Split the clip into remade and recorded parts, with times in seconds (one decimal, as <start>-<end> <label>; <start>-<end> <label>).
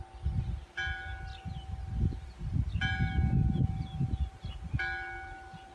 0.0-5.7 recorded